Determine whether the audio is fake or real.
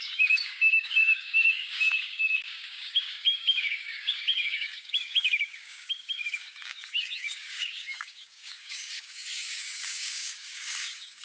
fake